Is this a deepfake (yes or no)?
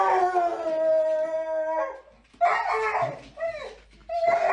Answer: no